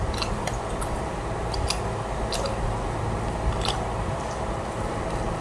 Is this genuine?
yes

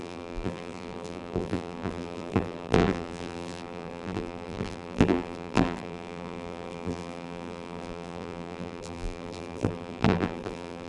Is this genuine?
no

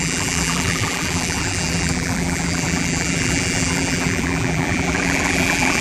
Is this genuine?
no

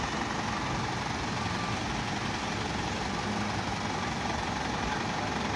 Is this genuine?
yes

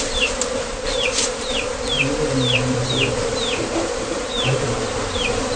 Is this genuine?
no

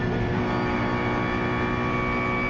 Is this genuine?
yes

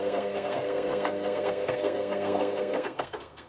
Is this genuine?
no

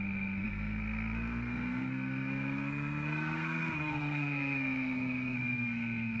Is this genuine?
no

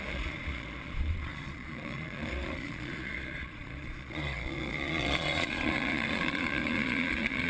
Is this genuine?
no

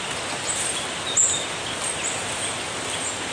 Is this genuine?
yes